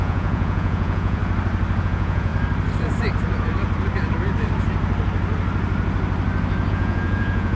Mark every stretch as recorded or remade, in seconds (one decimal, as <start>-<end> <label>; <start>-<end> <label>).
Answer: 0.0-1.2 remade; 1.2-1.8 recorded; 1.8-2.3 remade; 2.3-6.7 recorded; 6.7-7.6 remade